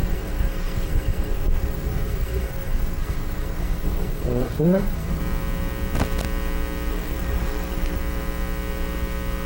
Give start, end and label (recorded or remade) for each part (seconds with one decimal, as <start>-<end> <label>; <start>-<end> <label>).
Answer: 0.0-5.2 remade; 5.2-6.9 recorded; 6.9-8.0 remade; 8.0-9.5 recorded